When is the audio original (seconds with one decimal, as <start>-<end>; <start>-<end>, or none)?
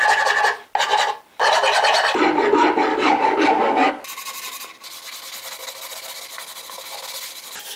0.0-2.9; 3.9-7.8